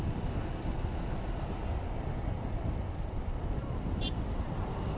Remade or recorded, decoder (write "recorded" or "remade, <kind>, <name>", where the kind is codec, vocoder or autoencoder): recorded